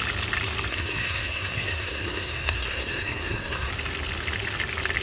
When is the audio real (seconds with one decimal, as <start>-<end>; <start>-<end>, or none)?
0.0-0.7; 3.7-5.0